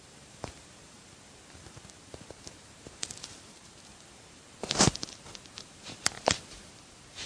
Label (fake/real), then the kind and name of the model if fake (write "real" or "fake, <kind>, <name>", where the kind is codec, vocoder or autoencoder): fake, vocoder, BigVGAN v2